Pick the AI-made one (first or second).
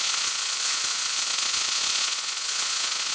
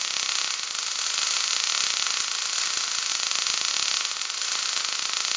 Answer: first